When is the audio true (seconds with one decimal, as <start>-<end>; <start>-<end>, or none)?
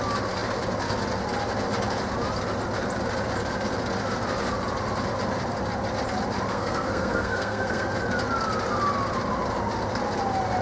0.0-6.5; 7.9-10.6